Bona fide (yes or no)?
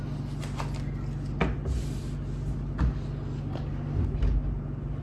yes